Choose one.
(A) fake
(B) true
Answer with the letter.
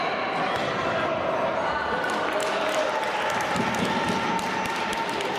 B